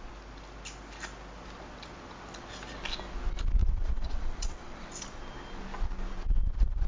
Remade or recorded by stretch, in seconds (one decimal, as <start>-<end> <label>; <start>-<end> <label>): 0.0-3.6 recorded; 3.6-4.9 remade; 4.9-6.9 recorded